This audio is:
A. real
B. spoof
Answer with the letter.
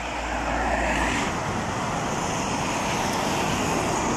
A